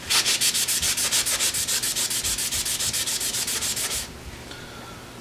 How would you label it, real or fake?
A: real